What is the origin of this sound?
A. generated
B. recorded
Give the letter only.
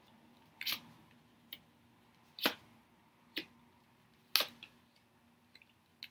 B